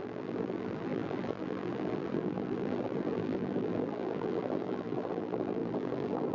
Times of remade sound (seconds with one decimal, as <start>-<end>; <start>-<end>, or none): 0.0-6.3